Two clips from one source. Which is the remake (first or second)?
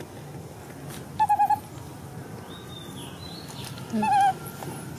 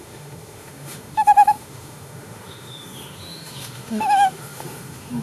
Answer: second